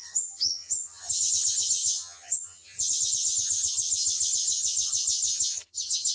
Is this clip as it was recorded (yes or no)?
no